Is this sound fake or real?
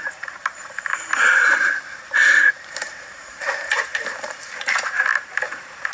fake